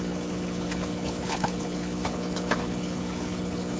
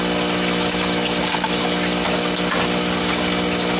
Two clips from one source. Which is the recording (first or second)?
second